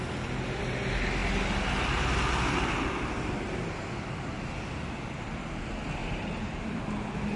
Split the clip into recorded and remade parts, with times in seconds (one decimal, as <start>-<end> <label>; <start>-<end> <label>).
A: 0.0-6.0 recorded; 6.0-6.8 remade; 6.8-7.4 recorded